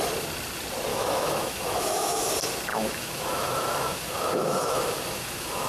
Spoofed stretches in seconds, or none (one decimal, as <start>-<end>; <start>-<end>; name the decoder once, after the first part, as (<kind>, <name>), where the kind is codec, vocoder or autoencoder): 0.9-2.3 (autoencoder, DAC-VAE); 2.7-5.7